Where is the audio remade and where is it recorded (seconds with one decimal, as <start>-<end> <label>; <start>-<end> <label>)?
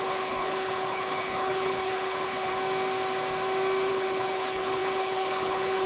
0.0-2.5 remade; 2.5-3.9 recorded; 3.9-5.9 remade